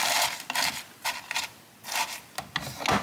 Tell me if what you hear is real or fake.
real